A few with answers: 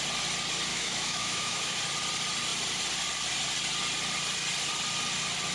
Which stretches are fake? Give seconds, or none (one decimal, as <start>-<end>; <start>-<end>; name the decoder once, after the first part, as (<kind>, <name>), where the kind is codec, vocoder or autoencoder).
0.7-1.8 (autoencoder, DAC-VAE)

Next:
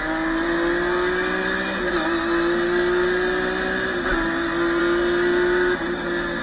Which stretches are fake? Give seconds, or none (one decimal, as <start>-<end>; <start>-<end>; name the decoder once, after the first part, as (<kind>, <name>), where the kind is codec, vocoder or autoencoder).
none

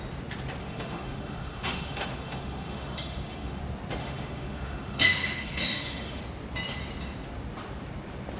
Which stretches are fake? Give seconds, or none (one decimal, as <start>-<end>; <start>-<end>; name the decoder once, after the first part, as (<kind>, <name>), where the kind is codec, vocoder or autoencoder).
0.6-3.6 (autoencoder, DAC-VAE); 4.0-6.2

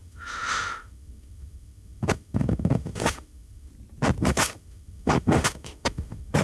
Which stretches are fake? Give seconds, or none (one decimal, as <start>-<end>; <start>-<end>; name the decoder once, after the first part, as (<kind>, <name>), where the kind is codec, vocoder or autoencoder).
0.0-3.7 (autoencoder, DAC-VAE); 4.2-6.4

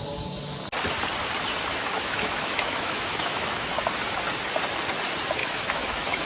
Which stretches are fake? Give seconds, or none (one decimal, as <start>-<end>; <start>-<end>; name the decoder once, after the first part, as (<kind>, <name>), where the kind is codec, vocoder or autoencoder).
1.7-3.7 (autoencoder, DAC-VAE); 5.4-6.3